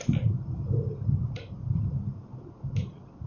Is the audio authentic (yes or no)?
yes